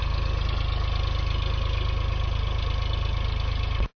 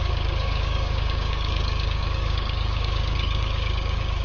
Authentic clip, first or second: first